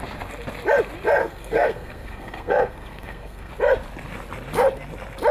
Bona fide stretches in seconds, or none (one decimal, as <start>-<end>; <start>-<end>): 0.0-1.2; 3.5-5.3